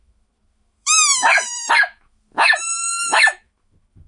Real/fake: fake